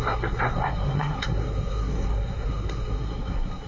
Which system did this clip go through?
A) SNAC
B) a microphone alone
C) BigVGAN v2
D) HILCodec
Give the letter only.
A